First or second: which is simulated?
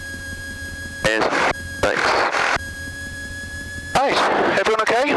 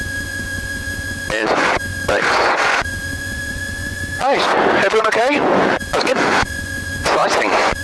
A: second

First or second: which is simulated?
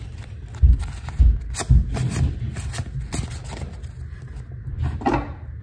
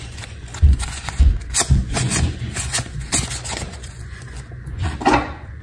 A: second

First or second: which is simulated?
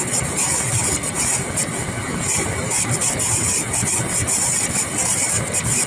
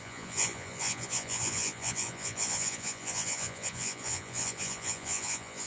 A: second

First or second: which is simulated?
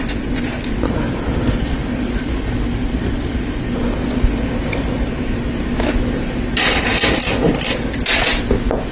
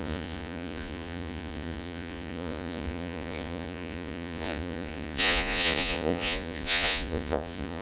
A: second